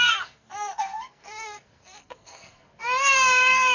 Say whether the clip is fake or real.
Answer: fake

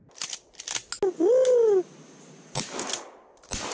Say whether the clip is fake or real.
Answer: real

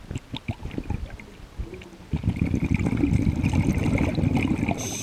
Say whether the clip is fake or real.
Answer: real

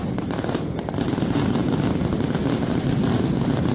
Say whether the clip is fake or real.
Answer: real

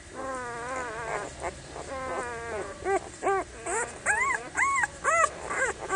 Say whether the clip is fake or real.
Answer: real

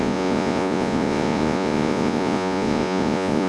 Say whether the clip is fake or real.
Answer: fake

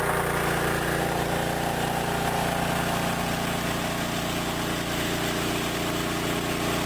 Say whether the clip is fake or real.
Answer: real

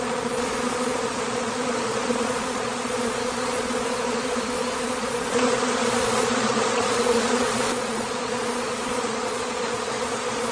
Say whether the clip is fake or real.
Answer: fake